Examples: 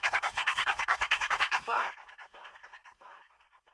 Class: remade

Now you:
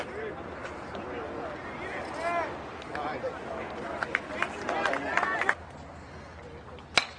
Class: recorded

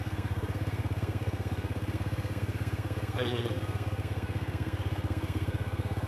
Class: remade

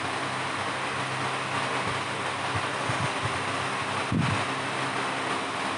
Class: recorded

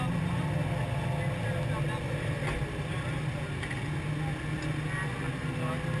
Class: recorded